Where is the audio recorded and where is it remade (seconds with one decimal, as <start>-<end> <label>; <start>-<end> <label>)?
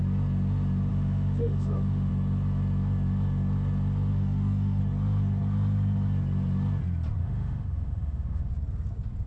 0.0-0.9 recorded; 0.9-2.1 remade; 2.1-4.1 recorded; 4.1-4.8 remade; 4.8-7.2 recorded; 7.2-8.5 remade; 8.5-9.3 recorded